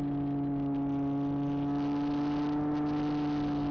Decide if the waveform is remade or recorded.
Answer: recorded